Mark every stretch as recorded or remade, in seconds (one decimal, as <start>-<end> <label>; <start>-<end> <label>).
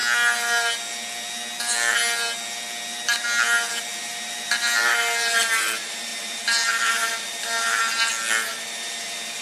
0.0-3.7 recorded; 3.7-7.8 remade; 7.8-8.5 recorded; 8.5-9.4 remade